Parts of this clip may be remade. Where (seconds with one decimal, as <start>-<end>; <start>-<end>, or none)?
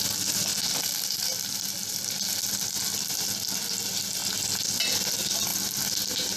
none